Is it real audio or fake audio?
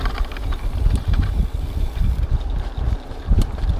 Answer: fake